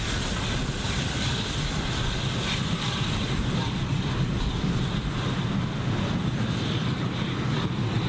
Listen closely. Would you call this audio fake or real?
real